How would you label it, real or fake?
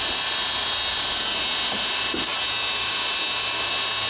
real